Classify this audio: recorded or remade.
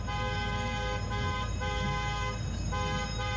recorded